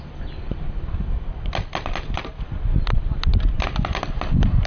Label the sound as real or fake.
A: real